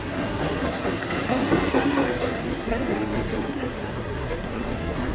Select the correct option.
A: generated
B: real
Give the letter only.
A